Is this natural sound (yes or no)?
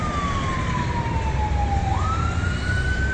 yes